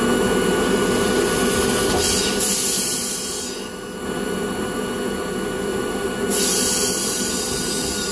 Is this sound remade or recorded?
recorded